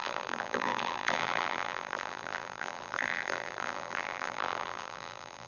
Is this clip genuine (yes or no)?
no